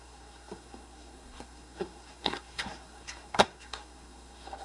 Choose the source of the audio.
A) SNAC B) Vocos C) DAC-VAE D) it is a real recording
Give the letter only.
A